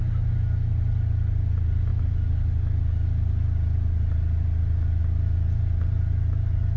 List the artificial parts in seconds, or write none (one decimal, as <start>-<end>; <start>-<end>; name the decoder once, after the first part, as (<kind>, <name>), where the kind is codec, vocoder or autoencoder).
none